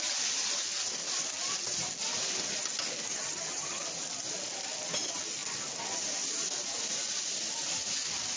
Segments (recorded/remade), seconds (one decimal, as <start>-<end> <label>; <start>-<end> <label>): 0.0-3.1 recorded; 3.1-3.8 remade; 3.8-8.4 recorded